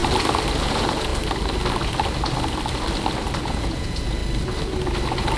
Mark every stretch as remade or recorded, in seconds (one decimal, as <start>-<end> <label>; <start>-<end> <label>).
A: 0.0-0.6 recorded; 0.6-1.1 remade; 1.1-3.4 recorded; 3.4-4.2 remade; 4.2-5.4 recorded